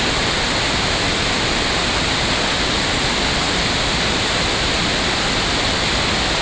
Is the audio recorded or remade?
recorded